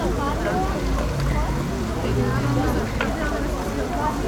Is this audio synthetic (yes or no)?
no